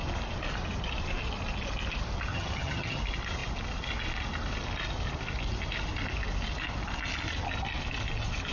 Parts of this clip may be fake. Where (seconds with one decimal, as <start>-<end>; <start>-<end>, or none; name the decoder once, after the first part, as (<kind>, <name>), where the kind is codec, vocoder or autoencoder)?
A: 2.3-3.0 (vocoder, HiFi-GAN)